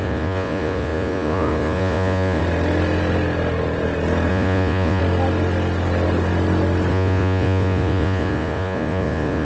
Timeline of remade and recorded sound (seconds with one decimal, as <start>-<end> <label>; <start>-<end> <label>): 0.0-2.4 remade; 2.4-4.3 recorded; 4.3-5.0 remade; 5.0-6.9 recorded; 6.9-9.4 remade